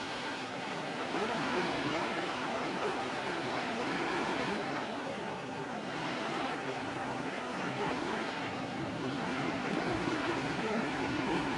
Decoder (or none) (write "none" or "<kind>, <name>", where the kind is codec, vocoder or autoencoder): codec, SNAC